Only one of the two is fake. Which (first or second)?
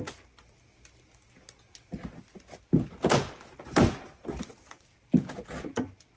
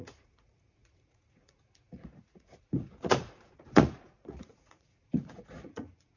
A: second